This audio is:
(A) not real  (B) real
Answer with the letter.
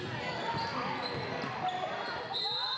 B